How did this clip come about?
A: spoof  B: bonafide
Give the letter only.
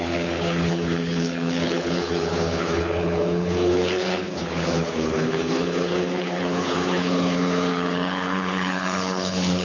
A